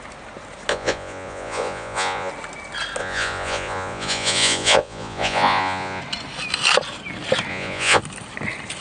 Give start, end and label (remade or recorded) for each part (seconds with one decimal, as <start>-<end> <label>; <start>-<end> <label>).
0.0-0.7 recorded; 0.7-2.3 remade; 2.3-3.0 recorded; 3.0-6.0 remade; 6.0-7.5 recorded; 7.5-8.0 remade; 8.0-8.8 recorded